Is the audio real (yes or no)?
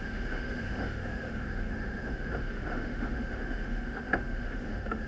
no